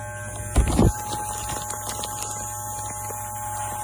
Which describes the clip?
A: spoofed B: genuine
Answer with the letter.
B